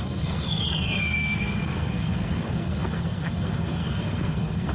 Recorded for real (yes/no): no